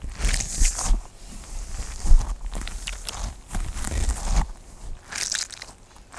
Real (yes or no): yes